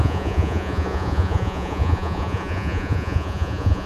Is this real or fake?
fake